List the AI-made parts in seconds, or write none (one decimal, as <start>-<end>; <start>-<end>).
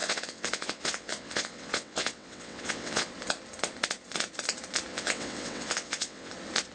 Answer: 0.0-3.1; 4.9-6.3